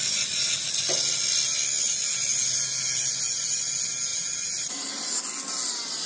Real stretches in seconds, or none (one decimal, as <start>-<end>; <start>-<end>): 0.0-4.1; 5.2-6.1